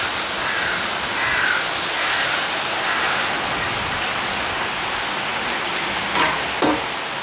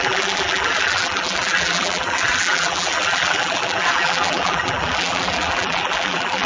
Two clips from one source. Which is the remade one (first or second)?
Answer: second